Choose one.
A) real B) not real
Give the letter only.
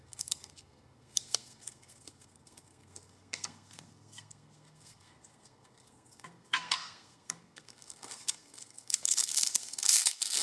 B